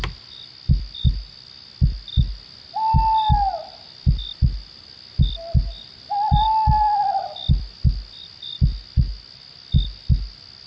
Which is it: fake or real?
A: real